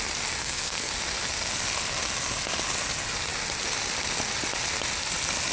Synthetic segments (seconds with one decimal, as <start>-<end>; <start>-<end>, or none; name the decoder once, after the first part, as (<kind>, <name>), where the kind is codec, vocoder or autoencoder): 0.4-0.9 (codec, SNAC)